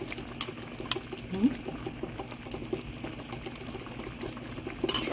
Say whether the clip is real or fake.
real